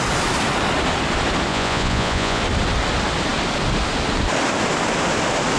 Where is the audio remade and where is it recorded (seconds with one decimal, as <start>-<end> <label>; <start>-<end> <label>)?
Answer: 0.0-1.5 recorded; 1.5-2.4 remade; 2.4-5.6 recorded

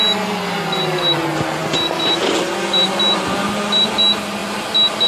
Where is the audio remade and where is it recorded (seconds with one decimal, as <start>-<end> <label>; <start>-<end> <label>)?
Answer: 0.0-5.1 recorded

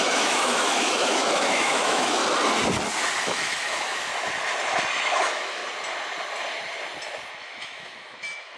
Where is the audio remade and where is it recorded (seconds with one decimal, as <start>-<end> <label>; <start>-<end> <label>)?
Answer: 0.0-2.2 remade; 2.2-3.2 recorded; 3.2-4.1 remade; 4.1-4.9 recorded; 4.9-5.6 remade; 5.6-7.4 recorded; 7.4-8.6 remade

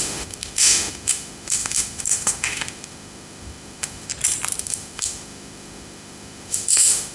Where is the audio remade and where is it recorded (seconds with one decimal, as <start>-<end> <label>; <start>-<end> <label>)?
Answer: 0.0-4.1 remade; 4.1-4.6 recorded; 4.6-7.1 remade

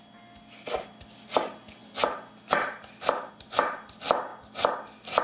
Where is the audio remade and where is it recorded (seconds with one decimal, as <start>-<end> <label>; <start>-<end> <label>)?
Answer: 0.0-5.2 recorded